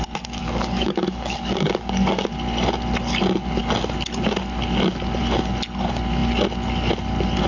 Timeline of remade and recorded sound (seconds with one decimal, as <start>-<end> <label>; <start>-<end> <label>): 0.0-0.4 recorded; 0.4-2.3 remade; 2.3-7.5 recorded